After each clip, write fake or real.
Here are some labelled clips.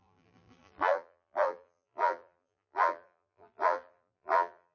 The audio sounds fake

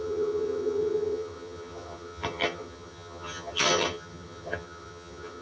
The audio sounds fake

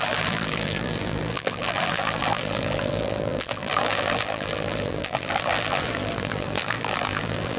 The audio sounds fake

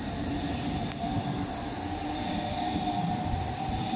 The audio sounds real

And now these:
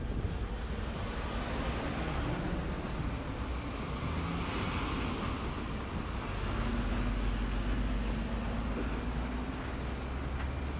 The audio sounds real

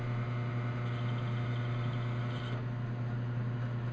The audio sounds real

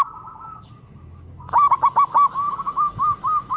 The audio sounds fake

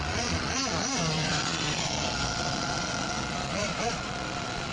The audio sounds fake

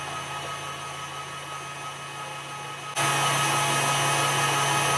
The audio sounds real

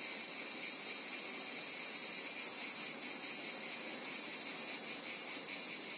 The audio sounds real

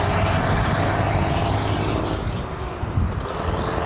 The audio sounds real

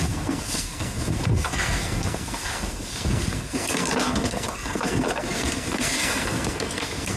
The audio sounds fake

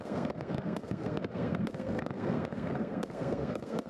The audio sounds fake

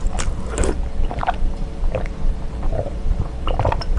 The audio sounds fake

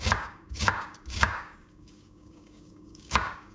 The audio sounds fake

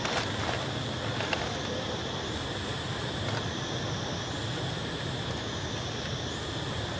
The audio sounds real